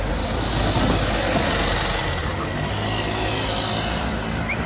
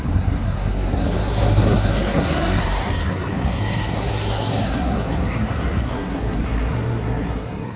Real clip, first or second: first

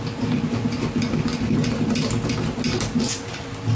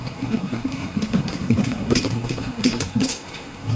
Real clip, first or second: first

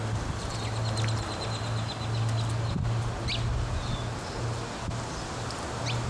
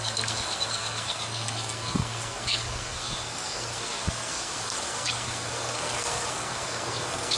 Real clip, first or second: first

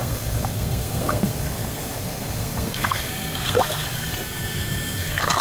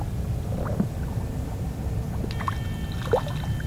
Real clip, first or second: second